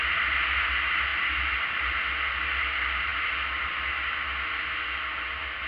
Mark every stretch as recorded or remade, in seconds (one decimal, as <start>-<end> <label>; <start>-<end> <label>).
0.0-5.7 recorded